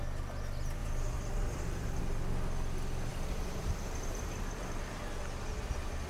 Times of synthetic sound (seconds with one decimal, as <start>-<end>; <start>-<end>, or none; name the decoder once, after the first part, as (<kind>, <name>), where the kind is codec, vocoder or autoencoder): 0.8-2.0 (vocoder, BigVGAN v2); 3.1-5.0

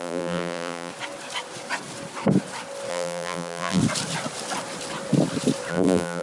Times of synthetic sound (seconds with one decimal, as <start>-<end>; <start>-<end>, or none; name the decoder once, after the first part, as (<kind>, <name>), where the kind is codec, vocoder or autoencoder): 0.0-0.9 (vocoder, BigVGAN v2); 2.9-3.8; 5.7-6.2

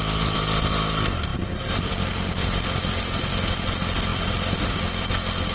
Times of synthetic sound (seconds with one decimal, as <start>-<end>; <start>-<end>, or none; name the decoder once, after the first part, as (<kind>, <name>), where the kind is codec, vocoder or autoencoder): 2.4-3.2 (vocoder, BigVGAN v2)

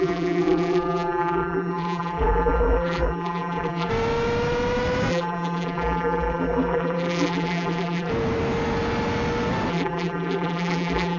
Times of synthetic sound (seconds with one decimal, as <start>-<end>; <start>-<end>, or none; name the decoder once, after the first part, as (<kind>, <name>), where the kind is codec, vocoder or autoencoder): 0.0-3.9 (vocoder, BigVGAN v2); 5.1-8.1; 9.7-11.2